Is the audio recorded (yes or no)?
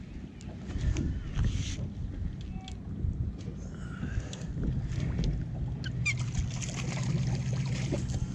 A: yes